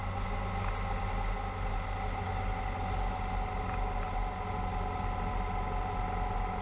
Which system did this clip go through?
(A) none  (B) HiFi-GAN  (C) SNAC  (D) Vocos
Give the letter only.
A